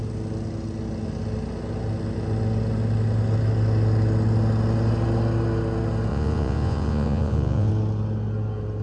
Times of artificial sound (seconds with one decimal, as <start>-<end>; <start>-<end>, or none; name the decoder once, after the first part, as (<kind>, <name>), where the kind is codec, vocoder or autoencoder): 6.1-7.7 (vocoder, Vocos)